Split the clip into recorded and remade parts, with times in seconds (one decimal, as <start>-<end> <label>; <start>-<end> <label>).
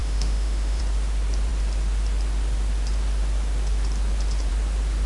0.0-0.8 remade; 0.8-5.1 recorded